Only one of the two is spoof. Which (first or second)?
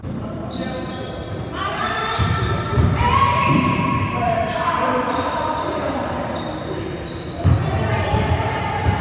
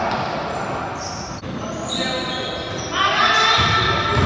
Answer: first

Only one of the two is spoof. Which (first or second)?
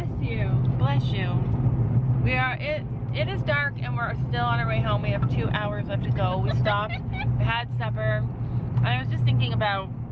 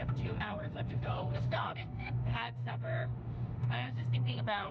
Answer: second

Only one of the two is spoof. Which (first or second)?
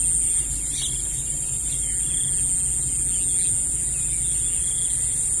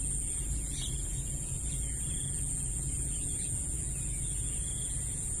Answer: second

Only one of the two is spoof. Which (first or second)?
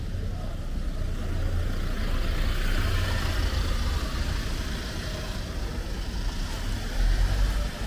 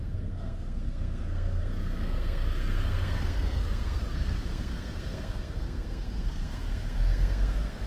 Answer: second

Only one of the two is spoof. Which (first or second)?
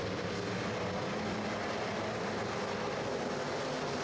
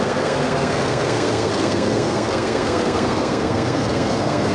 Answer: second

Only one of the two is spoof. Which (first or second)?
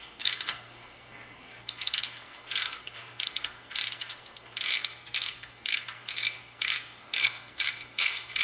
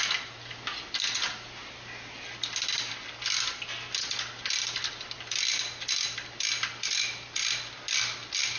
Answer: first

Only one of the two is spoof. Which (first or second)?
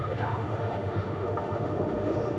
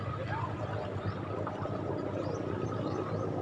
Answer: first